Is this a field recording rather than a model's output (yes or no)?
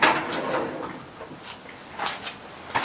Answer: yes